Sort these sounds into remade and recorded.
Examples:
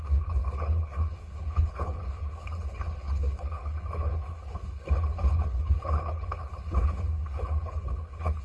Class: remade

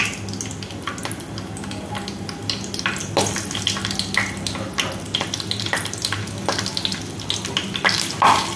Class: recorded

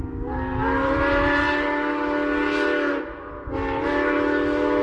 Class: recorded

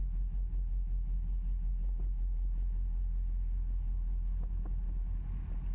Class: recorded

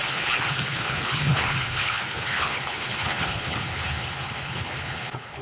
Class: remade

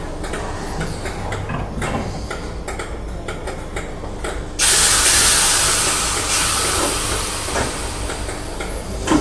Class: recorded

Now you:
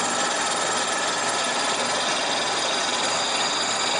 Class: recorded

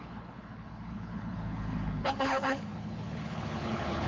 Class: remade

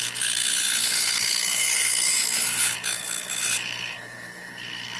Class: remade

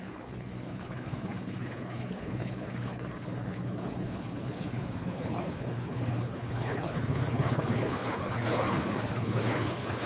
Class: remade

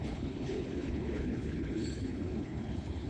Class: remade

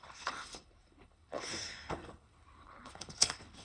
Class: remade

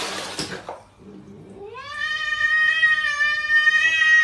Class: recorded